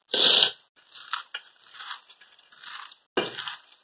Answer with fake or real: real